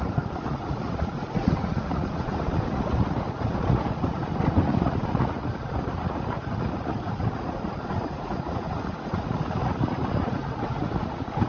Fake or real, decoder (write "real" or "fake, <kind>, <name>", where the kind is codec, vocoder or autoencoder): fake, vocoder, Vocos